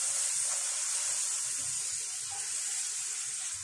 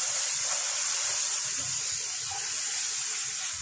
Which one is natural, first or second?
first